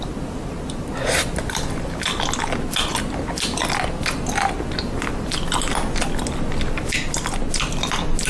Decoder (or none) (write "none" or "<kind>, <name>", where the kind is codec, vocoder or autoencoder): none